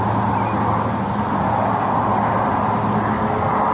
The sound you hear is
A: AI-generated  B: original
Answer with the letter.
B